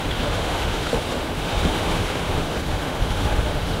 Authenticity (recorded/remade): remade